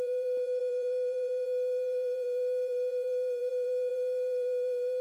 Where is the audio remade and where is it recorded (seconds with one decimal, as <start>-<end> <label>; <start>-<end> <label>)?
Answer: 0.0-5.0 remade